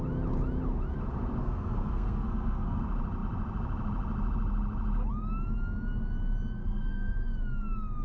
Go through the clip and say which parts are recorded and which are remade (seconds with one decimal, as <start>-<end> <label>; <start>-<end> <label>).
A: 0.0-1.4 recorded; 1.4-2.8 remade; 2.8-6.6 recorded; 6.6-7.1 remade; 7.1-8.0 recorded